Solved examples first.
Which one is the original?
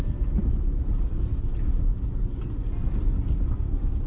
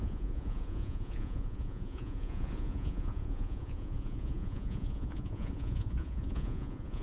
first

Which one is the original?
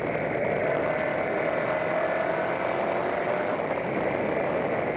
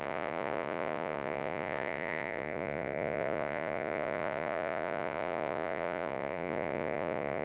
first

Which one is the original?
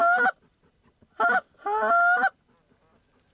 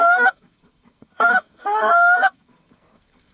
first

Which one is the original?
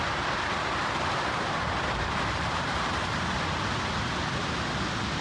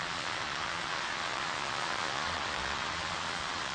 first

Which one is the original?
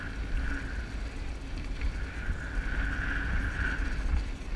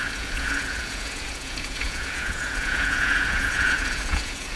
first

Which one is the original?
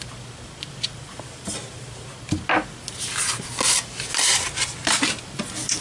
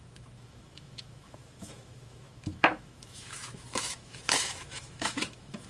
first